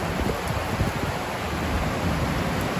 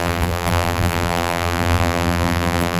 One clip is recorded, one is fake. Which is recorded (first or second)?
first